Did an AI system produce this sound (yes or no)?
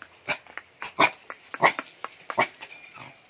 no